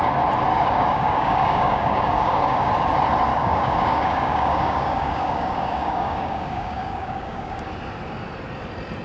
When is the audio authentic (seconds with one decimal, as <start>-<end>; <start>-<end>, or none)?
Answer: 0.0-0.5; 2.7-3.3; 7.7-9.0